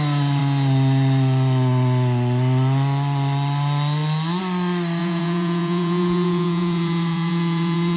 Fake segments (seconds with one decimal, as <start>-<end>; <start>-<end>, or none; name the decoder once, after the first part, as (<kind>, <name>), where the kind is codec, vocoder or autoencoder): 5.0-8.0 (vocoder, Vocos)